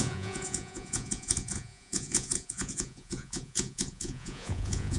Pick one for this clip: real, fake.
fake